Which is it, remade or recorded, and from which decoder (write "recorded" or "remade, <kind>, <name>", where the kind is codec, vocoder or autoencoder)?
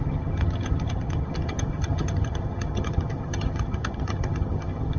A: remade, vocoder, HiFi-GAN